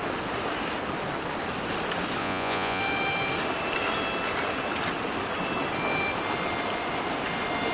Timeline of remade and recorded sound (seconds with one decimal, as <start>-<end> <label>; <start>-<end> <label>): 0.0-2.2 recorded; 2.2-2.8 remade; 2.8-7.7 recorded